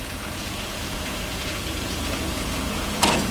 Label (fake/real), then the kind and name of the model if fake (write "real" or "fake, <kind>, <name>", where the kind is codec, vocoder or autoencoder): fake, vocoder, Vocos